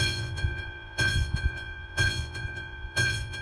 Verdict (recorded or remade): remade